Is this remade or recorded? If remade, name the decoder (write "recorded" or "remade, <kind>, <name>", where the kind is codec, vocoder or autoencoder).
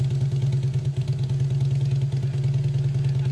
recorded